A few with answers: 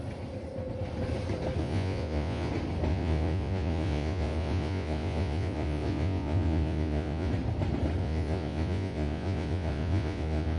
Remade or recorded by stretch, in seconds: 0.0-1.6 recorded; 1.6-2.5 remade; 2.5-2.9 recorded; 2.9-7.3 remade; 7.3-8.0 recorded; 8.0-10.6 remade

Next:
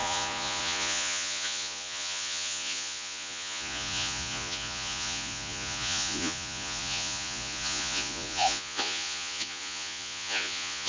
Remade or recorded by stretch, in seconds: 0.0-10.9 remade